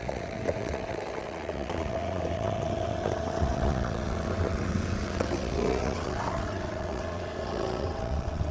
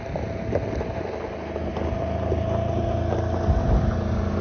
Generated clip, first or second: first